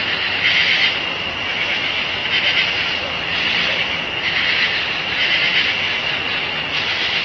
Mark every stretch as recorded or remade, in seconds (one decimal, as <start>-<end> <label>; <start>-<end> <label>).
0.0-7.2 recorded